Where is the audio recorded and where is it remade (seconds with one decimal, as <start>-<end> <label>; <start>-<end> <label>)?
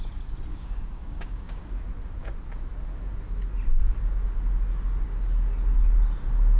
0.0-0.5 recorded; 0.5-1.7 remade; 1.7-6.6 recorded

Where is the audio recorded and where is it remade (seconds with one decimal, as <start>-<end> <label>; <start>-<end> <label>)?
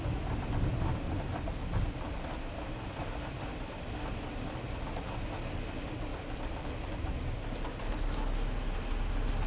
0.0-6.1 recorded; 6.1-7.1 remade; 7.1-9.5 recorded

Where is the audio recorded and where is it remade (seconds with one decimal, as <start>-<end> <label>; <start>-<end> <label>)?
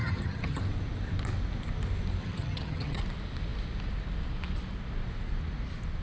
0.0-0.6 remade; 0.6-2.2 recorded; 2.2-3.0 remade; 3.0-6.0 recorded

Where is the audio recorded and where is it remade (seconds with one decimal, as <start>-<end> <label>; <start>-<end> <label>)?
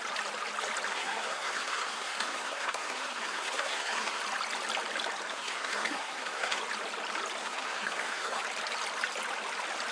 0.0-0.9 recorded; 0.9-4.2 remade; 4.2-5.3 recorded; 5.3-6.6 remade; 6.6-7.4 recorded; 7.4-8.4 remade; 8.4-9.9 recorded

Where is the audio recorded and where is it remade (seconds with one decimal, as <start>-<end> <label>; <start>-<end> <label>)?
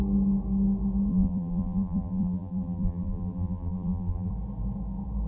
0.0-1.1 recorded; 1.1-4.3 remade; 4.3-5.3 recorded